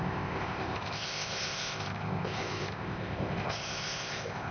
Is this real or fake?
fake